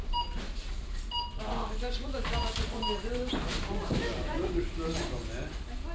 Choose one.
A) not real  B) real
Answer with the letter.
B